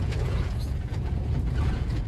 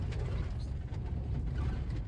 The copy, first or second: first